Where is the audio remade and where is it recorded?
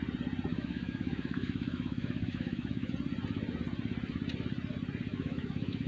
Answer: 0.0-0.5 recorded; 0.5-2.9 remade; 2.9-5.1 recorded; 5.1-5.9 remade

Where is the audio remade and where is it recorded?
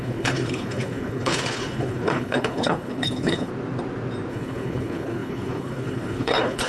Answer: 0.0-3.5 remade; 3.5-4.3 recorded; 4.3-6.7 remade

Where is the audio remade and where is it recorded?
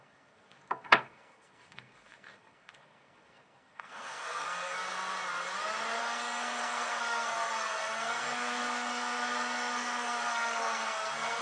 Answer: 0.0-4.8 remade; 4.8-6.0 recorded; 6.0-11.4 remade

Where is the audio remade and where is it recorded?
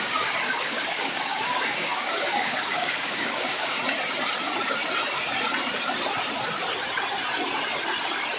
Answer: 0.0-3.8 remade; 3.8-8.4 recorded